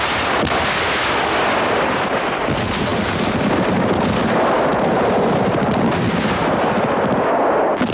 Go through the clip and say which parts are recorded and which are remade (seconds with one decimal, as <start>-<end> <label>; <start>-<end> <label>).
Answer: 0.0-7.9 recorded